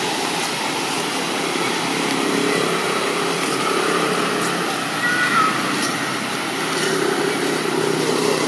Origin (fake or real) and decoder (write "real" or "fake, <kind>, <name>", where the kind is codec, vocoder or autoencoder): real